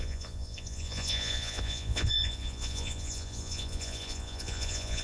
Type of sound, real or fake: fake